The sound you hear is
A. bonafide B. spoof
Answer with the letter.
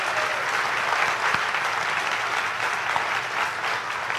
A